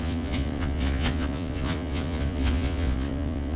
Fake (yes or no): yes